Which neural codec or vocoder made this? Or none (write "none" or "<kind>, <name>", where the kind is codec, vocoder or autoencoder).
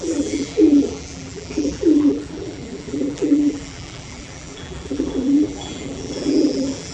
vocoder, BigVGAN v2